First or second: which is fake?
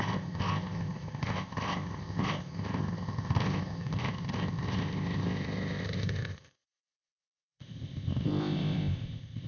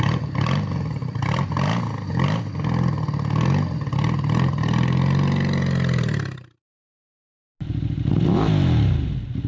first